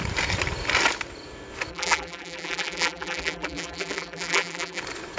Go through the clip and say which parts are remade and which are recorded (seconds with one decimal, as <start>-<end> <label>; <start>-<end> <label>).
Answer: 0.0-1.7 recorded; 1.7-4.8 remade; 4.8-5.2 recorded